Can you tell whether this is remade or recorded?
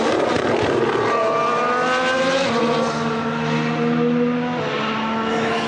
recorded